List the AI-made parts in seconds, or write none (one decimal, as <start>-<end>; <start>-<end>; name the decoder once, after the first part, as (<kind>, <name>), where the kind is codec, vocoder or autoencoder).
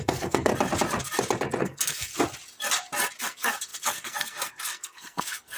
0.0-0.5 (codec, SNAC); 1.6-2.1; 3.2-5.6